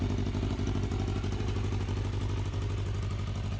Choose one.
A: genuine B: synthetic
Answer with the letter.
A